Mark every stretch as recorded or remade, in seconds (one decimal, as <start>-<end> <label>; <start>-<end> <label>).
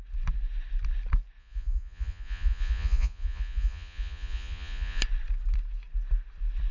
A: 0.0-1.4 recorded; 1.4-5.0 remade; 5.0-6.7 recorded